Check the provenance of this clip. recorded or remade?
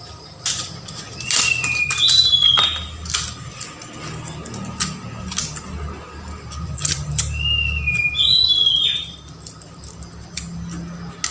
recorded